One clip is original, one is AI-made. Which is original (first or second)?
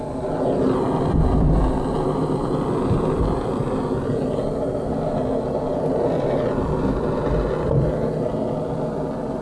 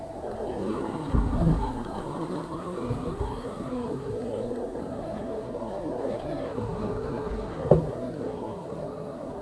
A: first